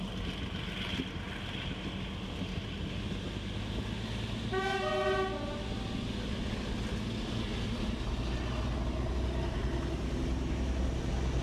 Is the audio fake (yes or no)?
no